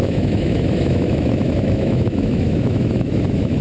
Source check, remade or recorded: remade